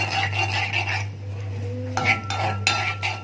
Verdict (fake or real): real